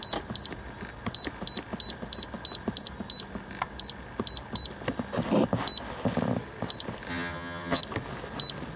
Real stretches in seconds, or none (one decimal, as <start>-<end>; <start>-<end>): 0.0-7.1; 7.8-8.8